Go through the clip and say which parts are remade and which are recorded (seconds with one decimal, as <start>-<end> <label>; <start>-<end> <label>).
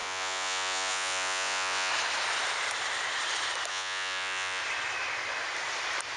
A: 0.0-1.9 remade; 1.9-3.7 recorded; 3.7-4.6 remade; 4.6-6.2 recorded